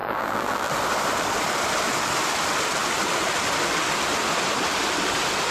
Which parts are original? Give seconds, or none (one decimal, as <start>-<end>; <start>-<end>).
0.7-5.5